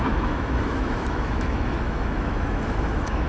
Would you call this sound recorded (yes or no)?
no